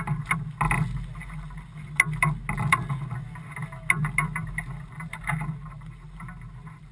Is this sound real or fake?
real